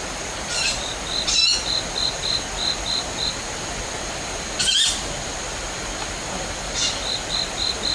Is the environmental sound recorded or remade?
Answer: recorded